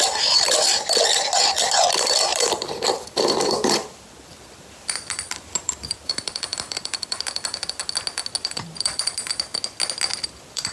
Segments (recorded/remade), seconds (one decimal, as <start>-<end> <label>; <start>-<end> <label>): 0.0-7.8 remade; 7.8-8.4 recorded; 8.4-9.5 remade; 9.5-10.2 recorded; 10.2-10.7 remade